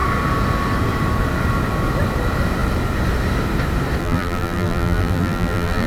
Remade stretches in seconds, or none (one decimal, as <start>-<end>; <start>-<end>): 4.0-5.9

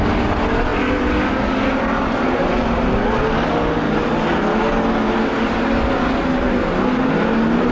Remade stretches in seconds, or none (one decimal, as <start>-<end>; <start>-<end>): none

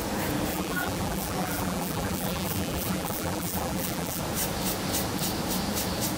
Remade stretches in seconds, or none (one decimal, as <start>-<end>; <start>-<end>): 0.5-4.2